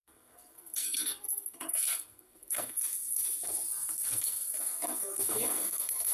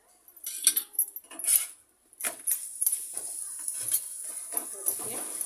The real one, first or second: second